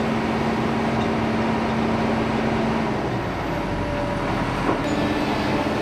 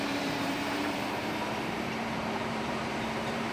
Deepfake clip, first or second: second